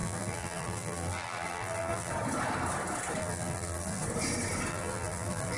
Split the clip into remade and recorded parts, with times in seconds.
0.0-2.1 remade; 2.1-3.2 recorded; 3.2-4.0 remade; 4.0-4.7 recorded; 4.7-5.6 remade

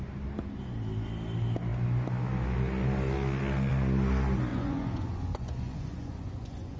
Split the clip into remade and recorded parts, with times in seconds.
0.0-4.5 recorded; 4.5-6.8 remade

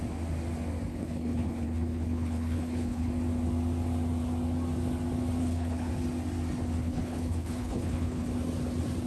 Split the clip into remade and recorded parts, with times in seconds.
0.0-0.9 recorded; 0.9-3.1 remade; 3.1-5.4 recorded; 5.4-5.9 remade; 5.9-6.8 recorded; 6.8-8.3 remade; 8.3-9.1 recorded